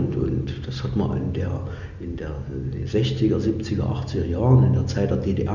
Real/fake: real